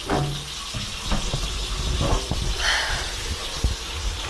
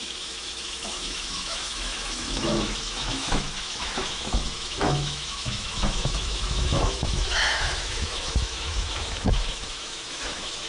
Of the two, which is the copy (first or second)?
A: second